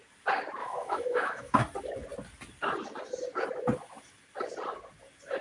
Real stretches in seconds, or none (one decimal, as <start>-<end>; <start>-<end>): 0.0-0.6; 1.6-5.4